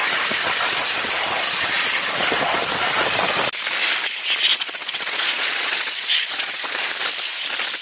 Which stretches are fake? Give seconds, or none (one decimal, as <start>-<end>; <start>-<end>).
4.5-6.9